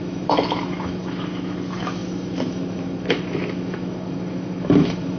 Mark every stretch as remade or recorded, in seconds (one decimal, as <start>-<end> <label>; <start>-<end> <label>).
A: 0.0-5.2 remade